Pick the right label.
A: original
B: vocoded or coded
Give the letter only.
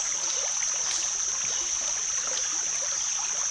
A